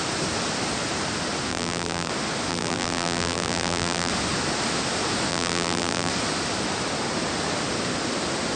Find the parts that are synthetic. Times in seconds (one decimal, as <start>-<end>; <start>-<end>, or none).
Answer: 1.5-2.1; 2.5-4.1; 5.3-6.1